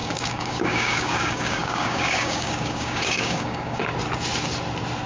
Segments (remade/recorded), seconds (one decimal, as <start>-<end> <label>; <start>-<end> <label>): 0.0-3.9 remade; 3.9-5.1 recorded